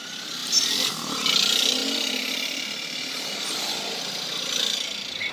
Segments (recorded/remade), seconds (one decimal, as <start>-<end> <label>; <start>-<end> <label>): 0.0-5.3 recorded